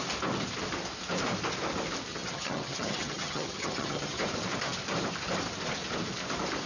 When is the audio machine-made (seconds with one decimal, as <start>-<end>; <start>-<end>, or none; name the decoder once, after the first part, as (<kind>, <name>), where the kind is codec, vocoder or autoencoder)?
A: 2.1-4.2 (vocoder, HiFi-GAN)